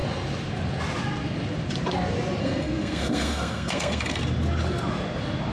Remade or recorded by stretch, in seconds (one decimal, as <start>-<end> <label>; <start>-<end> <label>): 0.0-2.4 recorded; 2.4-4.2 remade; 4.2-5.5 recorded